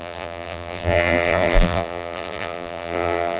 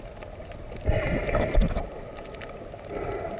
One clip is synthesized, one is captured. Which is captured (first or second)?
second